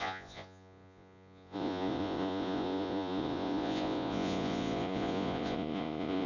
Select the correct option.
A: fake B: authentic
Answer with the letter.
A